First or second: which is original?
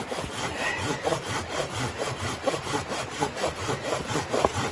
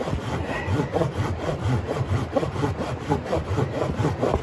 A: second